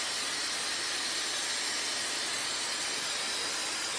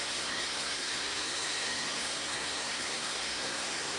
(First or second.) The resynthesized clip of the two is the second